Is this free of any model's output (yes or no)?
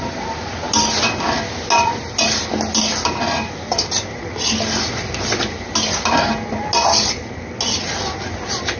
yes